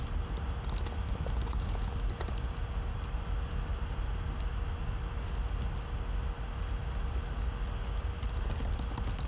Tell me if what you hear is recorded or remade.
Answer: recorded